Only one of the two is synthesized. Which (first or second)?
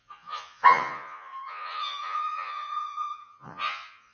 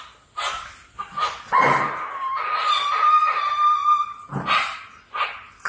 first